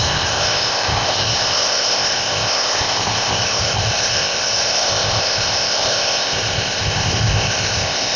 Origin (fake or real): fake